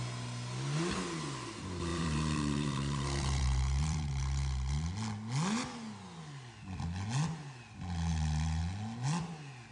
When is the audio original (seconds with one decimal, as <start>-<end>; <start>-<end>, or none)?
0.0-1.9; 4.2-8.1; 8.6-9.7